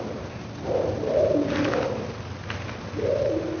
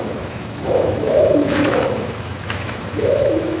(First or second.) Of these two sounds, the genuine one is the first